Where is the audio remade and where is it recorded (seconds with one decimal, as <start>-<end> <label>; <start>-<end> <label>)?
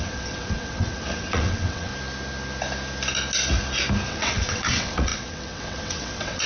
0.0-1.9 remade; 1.9-4.1 recorded; 4.1-6.5 remade